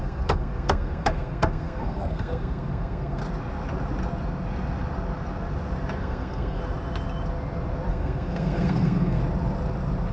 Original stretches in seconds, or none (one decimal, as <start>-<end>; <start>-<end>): 3.2-6.0; 6.6-7.9; 9.2-10.1